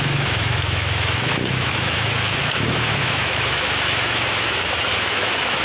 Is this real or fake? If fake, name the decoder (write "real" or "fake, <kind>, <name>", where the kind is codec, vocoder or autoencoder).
fake, autoencoder, DAC-VAE